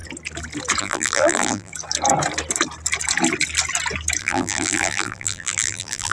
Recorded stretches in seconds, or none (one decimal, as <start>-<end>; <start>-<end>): 0.0-0.8; 1.7-4.2